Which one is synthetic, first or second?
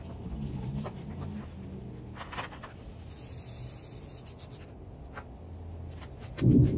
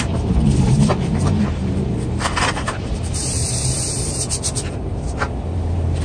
second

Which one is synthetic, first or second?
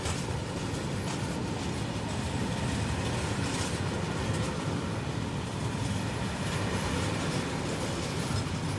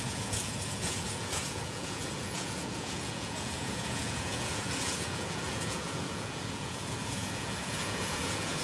second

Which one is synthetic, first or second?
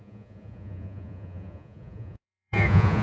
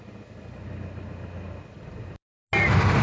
first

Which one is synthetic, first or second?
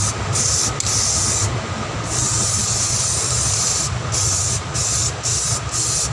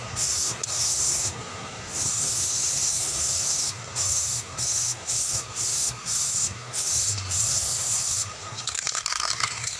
second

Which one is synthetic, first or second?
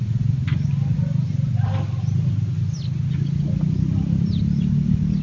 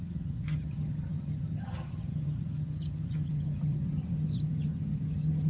second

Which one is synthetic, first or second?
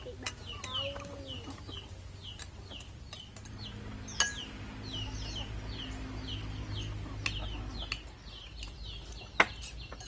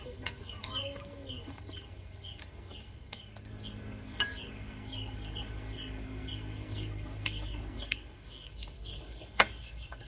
second